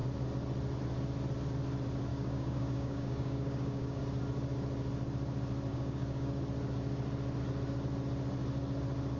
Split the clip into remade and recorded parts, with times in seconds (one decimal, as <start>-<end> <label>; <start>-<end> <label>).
0.0-2.1 recorded; 2.1-4.0 remade; 4.0-5.7 recorded; 5.7-6.4 remade; 6.4-9.2 recorded